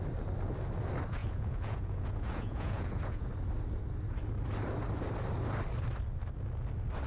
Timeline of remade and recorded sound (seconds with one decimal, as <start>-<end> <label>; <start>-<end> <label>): 0.0-1.2 recorded; 1.2-3.3 remade; 3.3-7.1 recorded